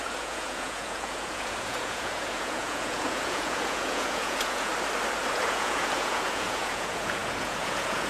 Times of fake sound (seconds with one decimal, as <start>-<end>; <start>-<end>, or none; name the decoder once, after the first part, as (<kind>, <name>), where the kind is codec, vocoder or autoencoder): 0.0-4.7 (vocoder, Vocos); 5.3-8.1